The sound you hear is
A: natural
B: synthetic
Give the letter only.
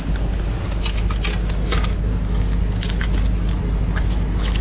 A